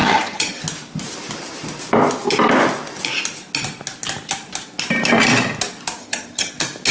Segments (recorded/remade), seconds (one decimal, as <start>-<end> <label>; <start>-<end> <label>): 0.0-0.6 remade; 0.6-6.0 recorded; 6.0-6.5 remade; 6.5-6.9 recorded